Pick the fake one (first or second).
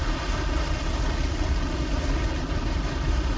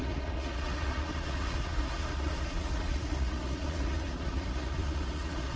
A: second